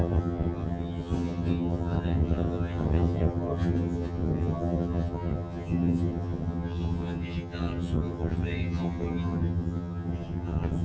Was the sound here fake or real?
fake